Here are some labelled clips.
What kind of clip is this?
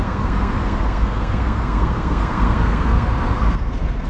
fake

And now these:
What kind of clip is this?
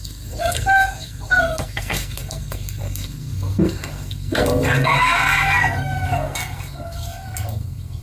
fake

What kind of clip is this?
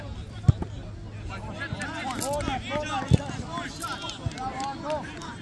real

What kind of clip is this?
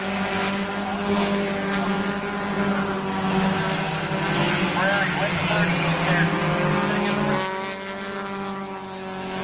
real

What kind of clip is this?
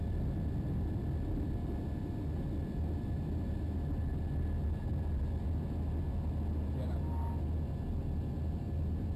real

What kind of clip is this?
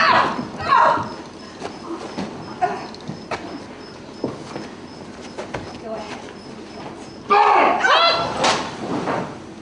real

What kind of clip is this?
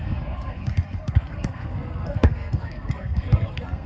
fake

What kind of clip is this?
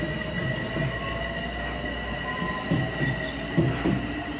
real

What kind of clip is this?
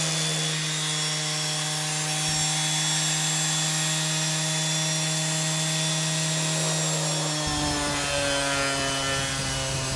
real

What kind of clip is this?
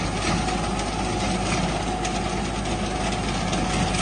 real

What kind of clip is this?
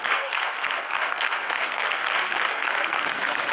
fake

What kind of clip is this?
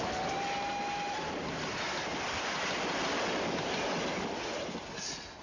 real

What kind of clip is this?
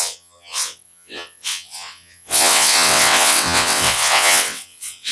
fake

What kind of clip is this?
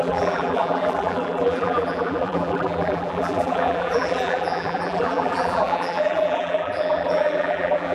fake